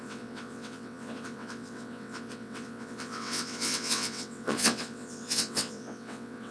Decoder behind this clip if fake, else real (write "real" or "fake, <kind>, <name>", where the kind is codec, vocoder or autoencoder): fake, vocoder, WaveNeXt